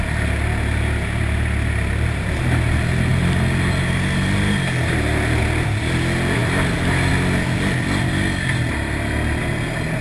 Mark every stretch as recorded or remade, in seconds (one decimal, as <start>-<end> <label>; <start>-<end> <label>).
0.0-10.0 recorded